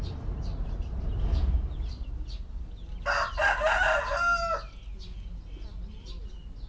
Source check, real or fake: real